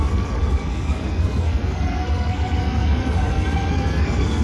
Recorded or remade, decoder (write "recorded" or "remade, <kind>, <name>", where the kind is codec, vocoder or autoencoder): remade, codec, SNAC